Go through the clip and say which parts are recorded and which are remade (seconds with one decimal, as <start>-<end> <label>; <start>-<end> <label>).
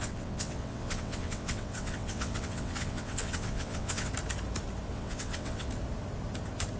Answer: 0.0-4.1 remade; 4.1-4.9 recorded; 4.9-5.7 remade; 5.7-6.8 recorded